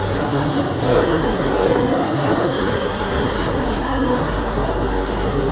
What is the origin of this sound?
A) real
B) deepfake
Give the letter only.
B